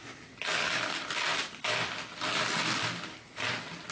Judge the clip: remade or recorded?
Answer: recorded